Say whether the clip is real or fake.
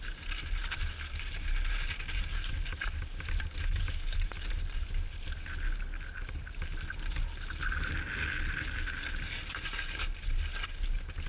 real